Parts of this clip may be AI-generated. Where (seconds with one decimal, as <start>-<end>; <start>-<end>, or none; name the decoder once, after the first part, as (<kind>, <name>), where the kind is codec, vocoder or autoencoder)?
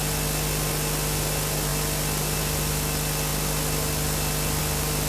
none